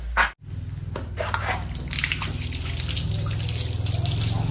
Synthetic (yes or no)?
no